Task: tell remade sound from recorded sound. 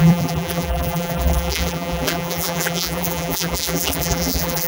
remade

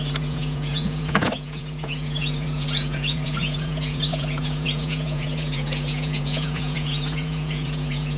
remade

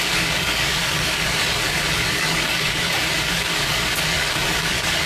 remade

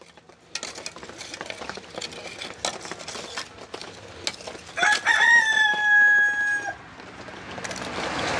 recorded